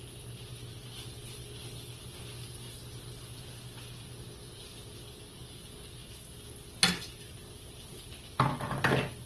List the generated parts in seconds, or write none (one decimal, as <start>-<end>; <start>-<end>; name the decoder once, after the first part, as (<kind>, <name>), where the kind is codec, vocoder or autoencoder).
none